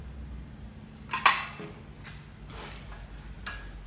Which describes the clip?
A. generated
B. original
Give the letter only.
B